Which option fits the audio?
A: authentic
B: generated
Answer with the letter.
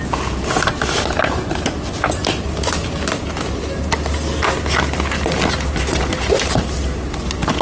A